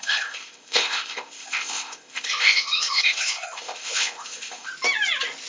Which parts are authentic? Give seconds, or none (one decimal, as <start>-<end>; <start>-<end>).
4.7-5.5